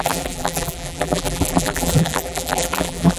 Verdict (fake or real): fake